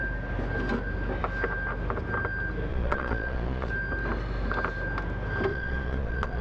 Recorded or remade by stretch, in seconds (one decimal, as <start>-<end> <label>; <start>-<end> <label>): 0.0-2.7 recorded; 2.7-3.7 remade; 3.7-5.5 recorded; 5.5-6.4 remade

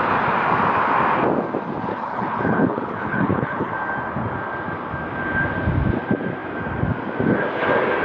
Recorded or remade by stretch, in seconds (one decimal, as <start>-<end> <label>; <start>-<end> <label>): 0.0-1.9 recorded; 1.9-3.7 remade; 3.7-8.0 recorded

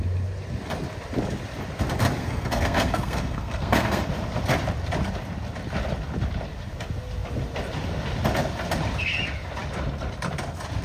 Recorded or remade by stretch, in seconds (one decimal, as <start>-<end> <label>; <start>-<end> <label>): 0.0-2.2 recorded; 2.2-4.1 remade; 4.1-10.8 recorded